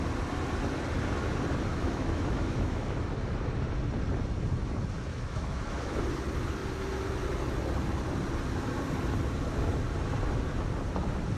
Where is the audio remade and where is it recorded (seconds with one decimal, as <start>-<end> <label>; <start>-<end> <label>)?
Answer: 0.0-1.7 recorded; 1.7-3.0 remade; 3.0-5.1 recorded; 5.1-6.0 remade; 6.0-11.4 recorded